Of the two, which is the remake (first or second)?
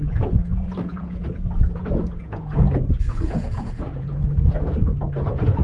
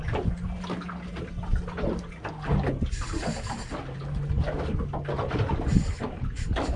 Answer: first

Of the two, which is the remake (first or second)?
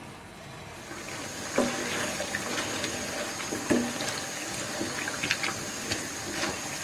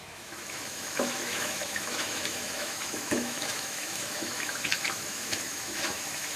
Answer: second